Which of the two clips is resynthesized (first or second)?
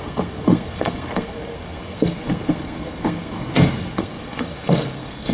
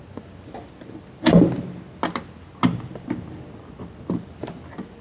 first